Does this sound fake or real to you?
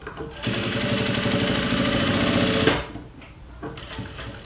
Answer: real